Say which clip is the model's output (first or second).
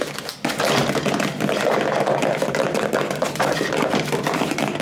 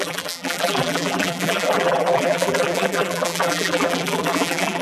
second